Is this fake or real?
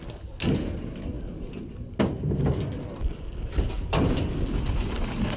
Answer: real